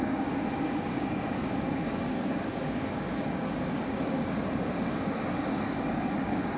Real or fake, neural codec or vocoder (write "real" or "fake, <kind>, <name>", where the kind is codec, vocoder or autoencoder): fake, codec, DAC